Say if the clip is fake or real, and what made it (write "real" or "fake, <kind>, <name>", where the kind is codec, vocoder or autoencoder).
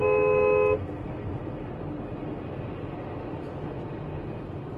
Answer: real